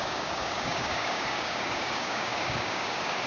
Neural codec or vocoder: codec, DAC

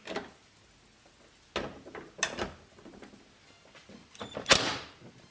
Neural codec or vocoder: none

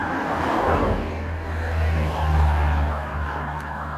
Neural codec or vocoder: codec, DAC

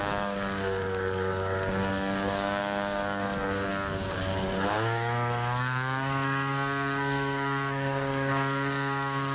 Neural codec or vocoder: codec, DAC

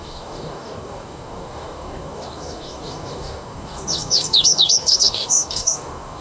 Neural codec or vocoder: codec, DAC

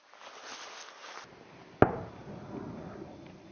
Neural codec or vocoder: none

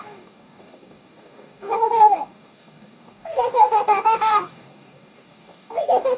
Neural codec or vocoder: codec, DAC